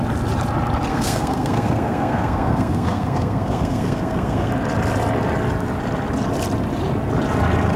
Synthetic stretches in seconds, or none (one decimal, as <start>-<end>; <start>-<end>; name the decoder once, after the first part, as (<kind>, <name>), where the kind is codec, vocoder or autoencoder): 0.9-4.5 (codec, SNAC)